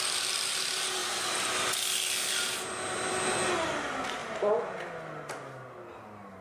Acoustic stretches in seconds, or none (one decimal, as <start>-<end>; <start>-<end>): 0.0-6.4